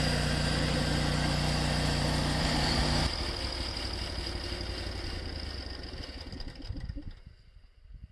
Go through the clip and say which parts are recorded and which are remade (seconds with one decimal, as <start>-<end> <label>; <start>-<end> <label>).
0.0-2.8 remade; 2.8-6.3 recorded; 6.3-8.1 remade